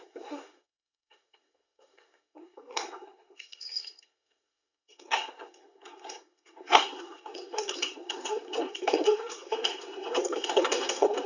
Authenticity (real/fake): fake